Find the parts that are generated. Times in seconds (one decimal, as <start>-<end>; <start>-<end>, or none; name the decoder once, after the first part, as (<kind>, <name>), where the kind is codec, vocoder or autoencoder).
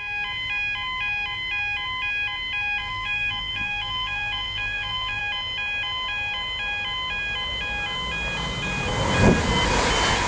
2.8-5.2 (vocoder, BigVGAN v2)